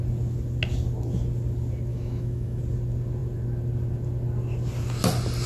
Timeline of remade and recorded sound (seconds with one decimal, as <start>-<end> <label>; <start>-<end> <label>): 0.0-1.9 recorded; 1.9-2.6 remade; 2.6-5.5 recorded